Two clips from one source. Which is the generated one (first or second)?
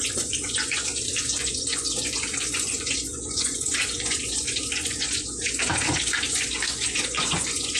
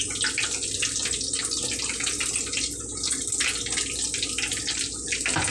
first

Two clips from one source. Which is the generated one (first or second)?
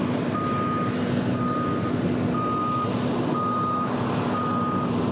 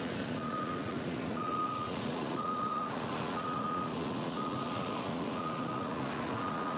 second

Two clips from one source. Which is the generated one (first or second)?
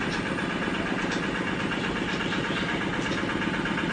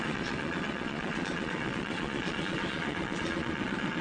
second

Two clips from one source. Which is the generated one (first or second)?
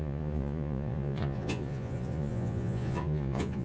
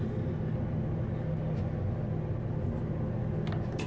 first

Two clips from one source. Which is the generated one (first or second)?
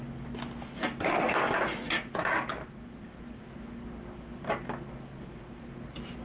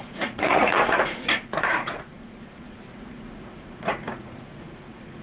second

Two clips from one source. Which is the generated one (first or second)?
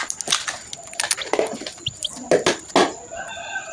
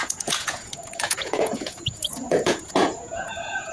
second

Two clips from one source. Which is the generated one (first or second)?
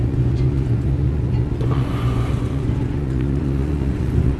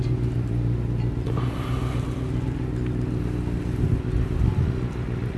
first